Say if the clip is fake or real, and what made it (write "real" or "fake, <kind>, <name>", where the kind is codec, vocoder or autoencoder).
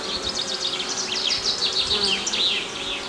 real